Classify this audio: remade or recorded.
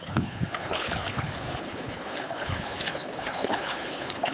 remade